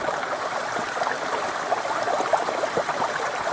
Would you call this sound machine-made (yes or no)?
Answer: no